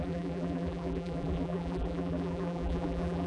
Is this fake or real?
fake